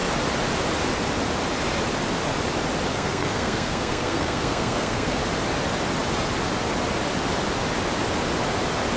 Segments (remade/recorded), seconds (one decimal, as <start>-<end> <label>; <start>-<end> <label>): 0.0-2.9 recorded; 2.9-5.2 remade; 5.2-9.0 recorded